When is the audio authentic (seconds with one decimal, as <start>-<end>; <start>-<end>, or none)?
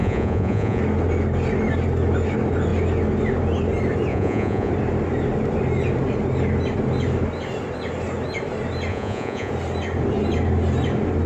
0.8-4.1; 4.7-8.9; 9.5-11.3